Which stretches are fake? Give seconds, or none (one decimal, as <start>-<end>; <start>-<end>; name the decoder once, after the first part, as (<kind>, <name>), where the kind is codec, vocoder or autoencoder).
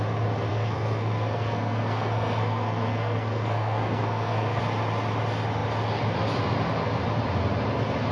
0.5-4.6 (codec, SNAC)